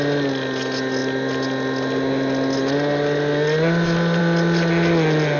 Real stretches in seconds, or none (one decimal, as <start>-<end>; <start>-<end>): 0.0-5.4